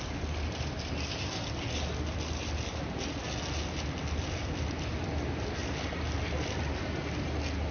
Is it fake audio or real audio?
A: real